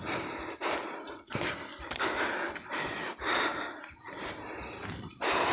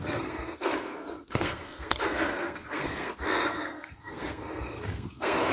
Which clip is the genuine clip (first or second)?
first